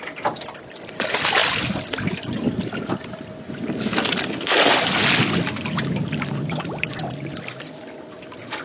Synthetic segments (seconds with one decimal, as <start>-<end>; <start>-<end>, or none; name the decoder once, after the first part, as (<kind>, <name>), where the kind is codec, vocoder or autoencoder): none